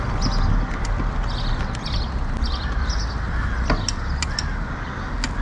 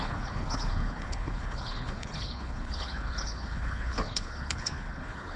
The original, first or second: first